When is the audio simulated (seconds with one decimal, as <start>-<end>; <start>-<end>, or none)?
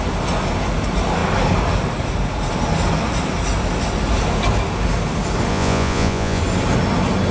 5.5-6.4